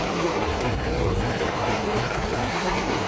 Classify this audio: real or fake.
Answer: fake